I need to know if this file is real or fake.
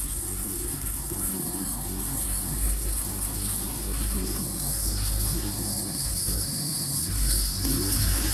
fake